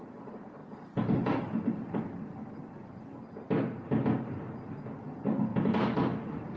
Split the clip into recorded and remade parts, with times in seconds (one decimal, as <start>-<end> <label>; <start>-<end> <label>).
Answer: 0.0-0.6 recorded; 0.6-3.0 remade; 3.0-5.5 recorded; 5.5-6.6 remade